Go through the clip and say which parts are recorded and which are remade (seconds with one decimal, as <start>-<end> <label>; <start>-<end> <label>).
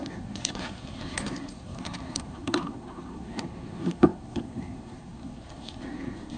0.0-6.4 remade